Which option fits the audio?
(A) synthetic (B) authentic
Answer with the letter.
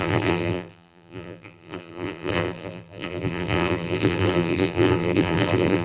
A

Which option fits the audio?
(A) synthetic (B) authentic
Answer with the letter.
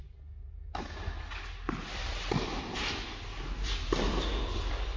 B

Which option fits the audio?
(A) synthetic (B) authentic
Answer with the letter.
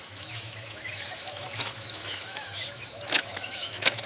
A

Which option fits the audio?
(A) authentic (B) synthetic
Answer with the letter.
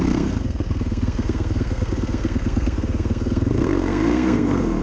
B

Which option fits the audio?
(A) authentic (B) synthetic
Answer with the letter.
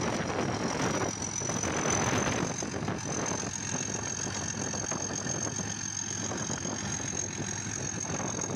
A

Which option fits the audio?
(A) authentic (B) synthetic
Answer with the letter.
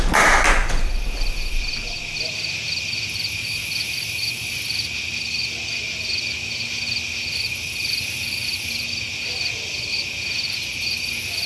A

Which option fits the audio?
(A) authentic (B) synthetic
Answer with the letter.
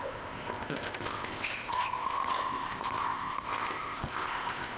B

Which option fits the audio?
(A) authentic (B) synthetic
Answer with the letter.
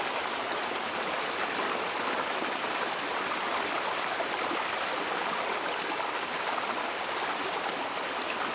A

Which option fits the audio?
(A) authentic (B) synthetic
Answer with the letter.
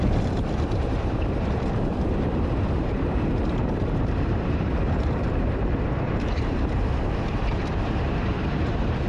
B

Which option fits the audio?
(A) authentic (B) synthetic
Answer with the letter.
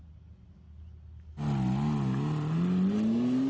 A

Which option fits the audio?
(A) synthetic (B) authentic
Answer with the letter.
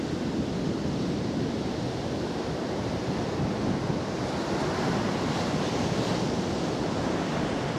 B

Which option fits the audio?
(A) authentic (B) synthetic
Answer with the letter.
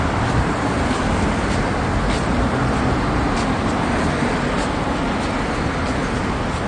A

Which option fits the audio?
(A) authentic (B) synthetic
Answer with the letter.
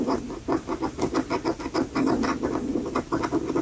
A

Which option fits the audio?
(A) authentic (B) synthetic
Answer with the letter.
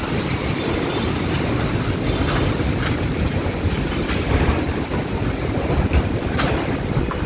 A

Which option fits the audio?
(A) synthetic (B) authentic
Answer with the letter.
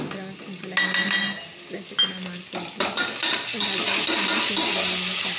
B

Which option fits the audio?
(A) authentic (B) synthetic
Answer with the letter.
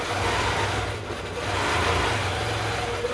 A